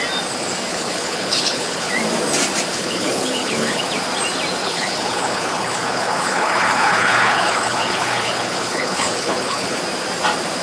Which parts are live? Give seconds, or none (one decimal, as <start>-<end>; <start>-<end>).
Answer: 0.0-0.7; 1.9-2.7; 3.8-4.6; 9.8-10.6